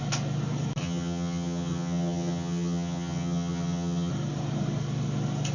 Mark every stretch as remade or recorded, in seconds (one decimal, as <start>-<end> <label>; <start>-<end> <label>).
0.0-0.8 recorded; 0.8-4.1 remade; 4.1-5.5 recorded